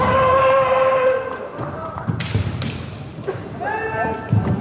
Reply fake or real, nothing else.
fake